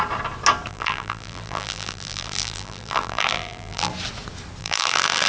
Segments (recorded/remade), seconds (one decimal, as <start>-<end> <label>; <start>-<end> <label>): 0.0-0.7 recorded; 0.7-3.9 remade; 3.9-4.6 recorded; 4.6-5.3 remade